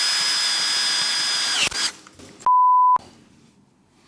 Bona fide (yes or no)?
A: yes